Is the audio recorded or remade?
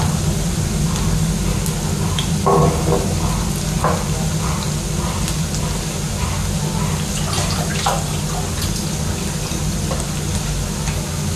recorded